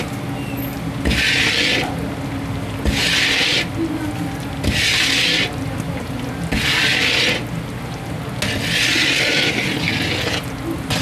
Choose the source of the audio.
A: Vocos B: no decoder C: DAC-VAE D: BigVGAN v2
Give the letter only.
B